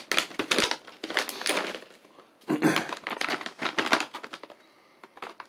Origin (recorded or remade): recorded